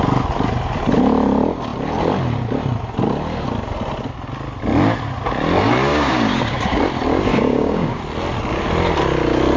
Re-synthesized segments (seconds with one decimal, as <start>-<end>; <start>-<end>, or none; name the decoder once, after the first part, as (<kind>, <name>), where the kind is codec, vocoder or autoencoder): 5.9-6.8 (codec, DAC); 7.3-8.0